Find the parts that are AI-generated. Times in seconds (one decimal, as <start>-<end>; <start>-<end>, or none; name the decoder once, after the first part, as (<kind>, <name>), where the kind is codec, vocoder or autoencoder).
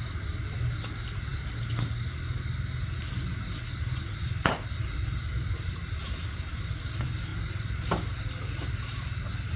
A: none